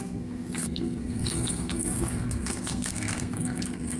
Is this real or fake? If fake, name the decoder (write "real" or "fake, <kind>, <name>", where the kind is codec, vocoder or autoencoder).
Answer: fake, codec, SNAC